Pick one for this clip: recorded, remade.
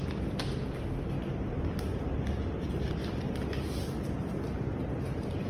recorded